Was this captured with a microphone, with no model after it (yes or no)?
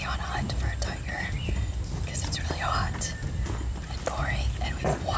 yes